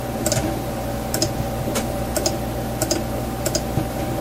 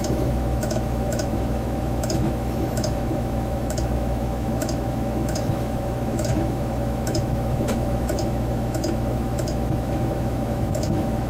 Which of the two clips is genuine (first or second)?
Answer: first